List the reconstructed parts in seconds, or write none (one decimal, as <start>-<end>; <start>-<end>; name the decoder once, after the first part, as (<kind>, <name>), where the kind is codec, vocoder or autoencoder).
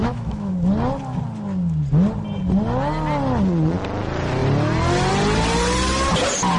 0.0-0.5 (autoencoder, DAC-VAE)